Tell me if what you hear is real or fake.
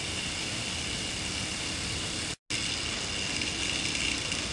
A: real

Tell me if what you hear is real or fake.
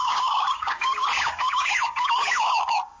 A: fake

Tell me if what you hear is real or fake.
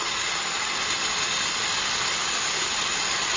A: real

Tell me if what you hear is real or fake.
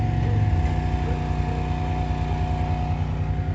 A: real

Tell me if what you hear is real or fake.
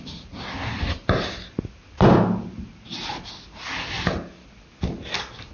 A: real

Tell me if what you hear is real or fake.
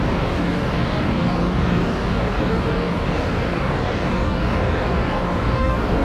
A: fake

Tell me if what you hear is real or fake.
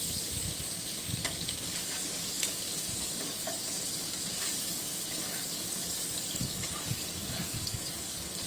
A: fake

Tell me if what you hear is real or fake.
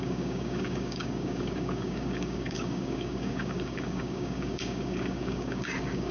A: fake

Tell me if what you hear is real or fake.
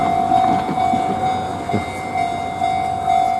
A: real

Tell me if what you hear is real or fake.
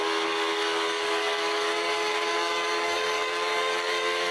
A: fake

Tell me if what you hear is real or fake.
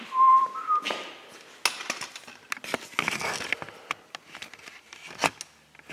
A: real